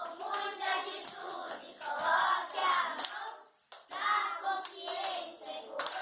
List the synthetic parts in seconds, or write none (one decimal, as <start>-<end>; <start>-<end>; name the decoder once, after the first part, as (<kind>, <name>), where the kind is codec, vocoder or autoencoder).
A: 1.2-1.9 (vocoder, Vocos)